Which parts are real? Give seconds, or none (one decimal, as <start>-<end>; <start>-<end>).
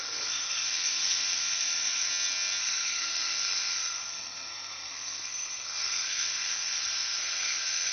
2.1-2.6